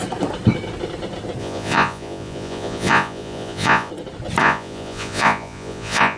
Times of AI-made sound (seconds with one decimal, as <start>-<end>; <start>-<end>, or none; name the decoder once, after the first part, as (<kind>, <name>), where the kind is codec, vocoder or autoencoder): 1.4-3.9 (vocoder, Vocos); 4.4-6.2

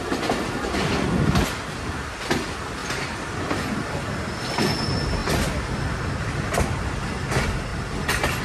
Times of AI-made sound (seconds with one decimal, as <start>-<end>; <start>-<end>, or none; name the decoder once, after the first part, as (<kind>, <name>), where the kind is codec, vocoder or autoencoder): none